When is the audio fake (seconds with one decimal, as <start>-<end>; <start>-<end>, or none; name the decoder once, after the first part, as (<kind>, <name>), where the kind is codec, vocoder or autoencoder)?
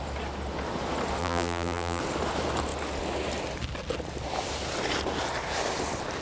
1.2-2.0 (vocoder, BigVGAN v2)